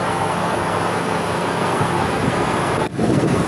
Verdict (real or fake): fake